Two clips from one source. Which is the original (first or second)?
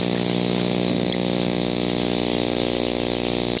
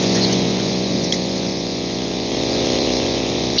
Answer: first